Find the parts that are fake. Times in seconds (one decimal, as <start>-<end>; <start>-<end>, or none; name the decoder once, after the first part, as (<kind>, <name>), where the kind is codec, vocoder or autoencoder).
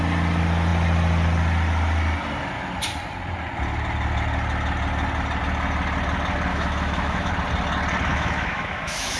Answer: 6.5-7.3 (autoencoder, DAC-VAE); 8.1-9.2